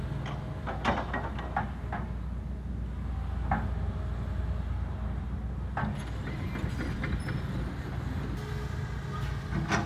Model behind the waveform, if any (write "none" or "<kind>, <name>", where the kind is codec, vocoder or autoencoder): none